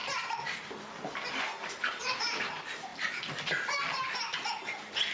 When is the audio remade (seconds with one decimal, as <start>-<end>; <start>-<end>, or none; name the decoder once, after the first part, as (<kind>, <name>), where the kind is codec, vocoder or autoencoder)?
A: 0.0-2.0 (vocoder, BigVGAN v2)